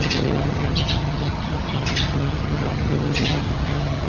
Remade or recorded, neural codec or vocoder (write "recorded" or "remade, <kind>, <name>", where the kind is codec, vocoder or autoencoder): remade, vocoder, HiFi-GAN